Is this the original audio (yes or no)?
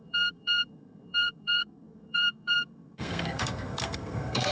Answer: no